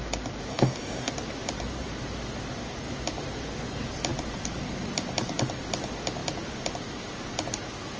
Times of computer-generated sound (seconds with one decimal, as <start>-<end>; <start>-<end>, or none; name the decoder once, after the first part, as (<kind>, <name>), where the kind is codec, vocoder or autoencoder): 0.5-1.1 (codec, DAC)